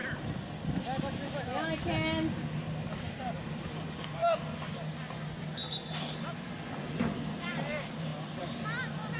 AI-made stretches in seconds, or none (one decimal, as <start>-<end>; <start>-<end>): 2.9-4.2; 6.8-8.1